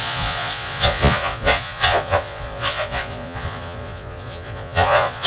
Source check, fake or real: fake